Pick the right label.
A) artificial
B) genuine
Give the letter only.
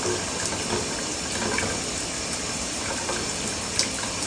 B